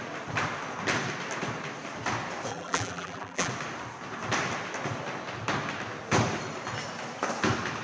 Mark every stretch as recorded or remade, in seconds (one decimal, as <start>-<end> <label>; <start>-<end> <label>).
0.0-2.5 recorded; 2.5-3.5 remade; 3.5-7.8 recorded